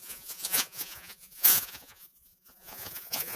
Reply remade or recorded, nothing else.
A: remade